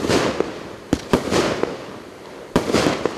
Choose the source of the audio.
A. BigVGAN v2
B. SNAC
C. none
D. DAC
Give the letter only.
A